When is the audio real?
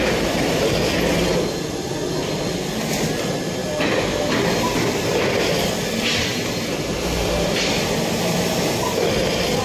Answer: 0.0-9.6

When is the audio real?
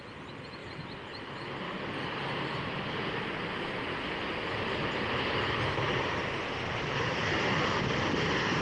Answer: 0.0-0.6; 1.4-8.6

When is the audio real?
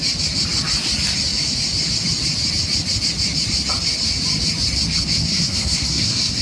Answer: 0.0-5.3